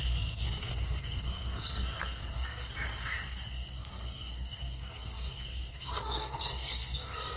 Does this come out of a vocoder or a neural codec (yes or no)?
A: yes